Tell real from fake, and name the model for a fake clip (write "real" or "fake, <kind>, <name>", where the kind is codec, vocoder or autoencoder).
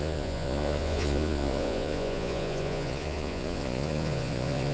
fake, vocoder, Vocos